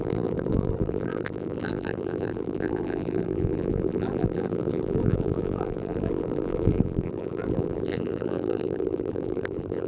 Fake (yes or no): yes